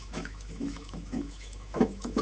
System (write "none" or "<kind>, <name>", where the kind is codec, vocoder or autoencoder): autoencoder, DAC-VAE